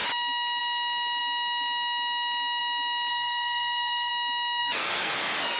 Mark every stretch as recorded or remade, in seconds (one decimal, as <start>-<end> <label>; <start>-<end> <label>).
0.0-3.1 recorded; 3.1-4.1 remade; 4.1-4.6 recorded; 4.6-5.6 remade